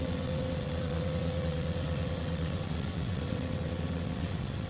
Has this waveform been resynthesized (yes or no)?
yes